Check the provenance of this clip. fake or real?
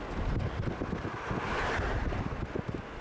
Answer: real